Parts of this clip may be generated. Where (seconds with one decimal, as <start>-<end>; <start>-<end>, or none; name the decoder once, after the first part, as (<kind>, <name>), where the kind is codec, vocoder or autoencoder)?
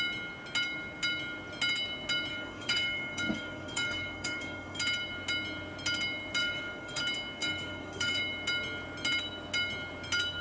2.3-4.8 (codec, DAC); 6.4-7.0; 7.4-8.2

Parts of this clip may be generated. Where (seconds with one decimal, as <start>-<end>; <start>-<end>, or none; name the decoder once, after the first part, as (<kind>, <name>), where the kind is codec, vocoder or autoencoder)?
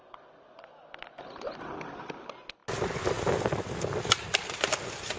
none